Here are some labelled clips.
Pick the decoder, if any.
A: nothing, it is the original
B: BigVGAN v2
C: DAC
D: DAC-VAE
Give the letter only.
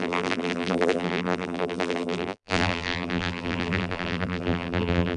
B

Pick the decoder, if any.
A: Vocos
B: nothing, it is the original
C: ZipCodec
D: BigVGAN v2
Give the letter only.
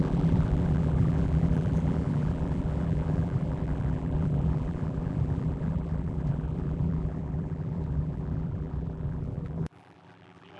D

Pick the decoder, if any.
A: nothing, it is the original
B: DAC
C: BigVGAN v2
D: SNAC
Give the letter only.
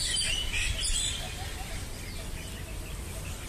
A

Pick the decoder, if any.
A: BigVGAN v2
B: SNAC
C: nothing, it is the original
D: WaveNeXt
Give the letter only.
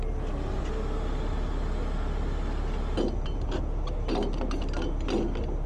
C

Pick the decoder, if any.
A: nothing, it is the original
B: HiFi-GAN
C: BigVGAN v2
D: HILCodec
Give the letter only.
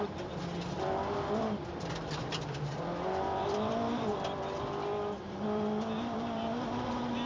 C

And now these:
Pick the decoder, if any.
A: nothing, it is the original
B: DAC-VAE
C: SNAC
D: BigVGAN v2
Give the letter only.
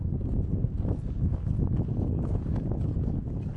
A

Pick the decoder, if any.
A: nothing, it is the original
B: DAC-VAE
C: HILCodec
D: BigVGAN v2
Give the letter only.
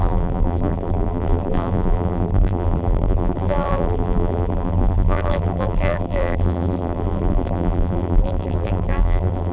D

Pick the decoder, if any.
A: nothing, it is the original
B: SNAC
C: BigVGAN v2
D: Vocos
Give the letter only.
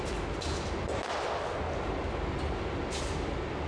A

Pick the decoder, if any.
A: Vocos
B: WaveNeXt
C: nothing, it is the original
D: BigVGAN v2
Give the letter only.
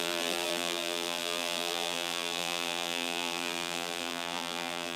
D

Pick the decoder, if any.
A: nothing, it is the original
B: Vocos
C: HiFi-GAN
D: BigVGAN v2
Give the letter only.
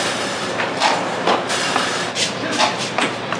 D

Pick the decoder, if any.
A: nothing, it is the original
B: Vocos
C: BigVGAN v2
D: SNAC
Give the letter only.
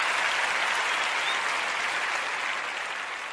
A